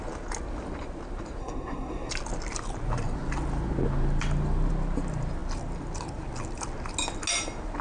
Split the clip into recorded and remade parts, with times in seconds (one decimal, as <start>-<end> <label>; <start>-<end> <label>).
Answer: 0.0-1.4 recorded; 1.4-2.1 remade; 2.1-7.8 recorded